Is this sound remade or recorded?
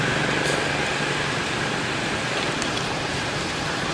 recorded